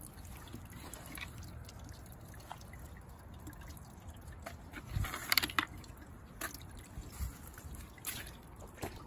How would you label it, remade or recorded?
recorded